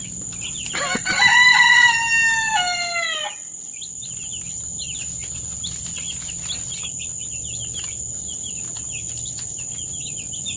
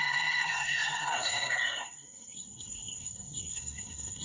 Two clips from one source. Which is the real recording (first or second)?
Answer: first